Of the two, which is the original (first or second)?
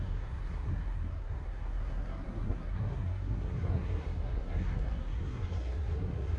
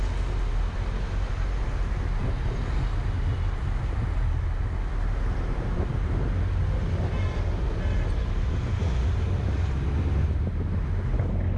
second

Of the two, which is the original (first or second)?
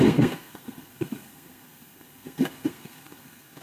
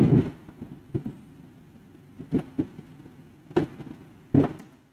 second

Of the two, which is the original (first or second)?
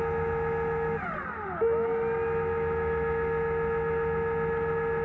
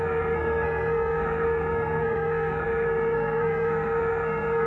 first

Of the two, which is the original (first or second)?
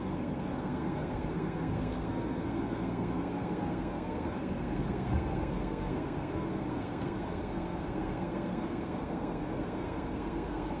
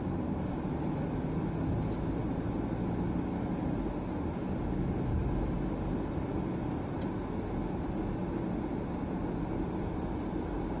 second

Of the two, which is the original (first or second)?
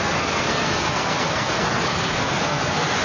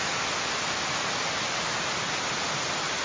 second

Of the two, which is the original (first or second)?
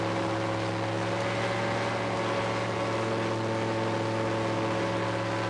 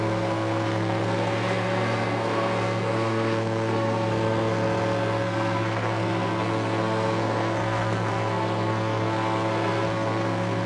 first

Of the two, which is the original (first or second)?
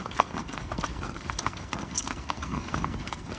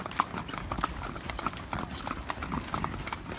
second